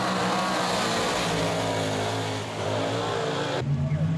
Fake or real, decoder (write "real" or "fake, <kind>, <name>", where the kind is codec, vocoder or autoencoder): real